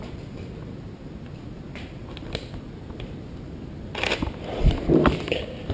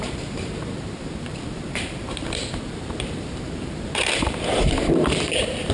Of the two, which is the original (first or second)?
first